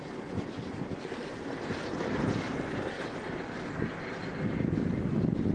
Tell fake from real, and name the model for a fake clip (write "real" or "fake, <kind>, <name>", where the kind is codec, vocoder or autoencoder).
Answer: real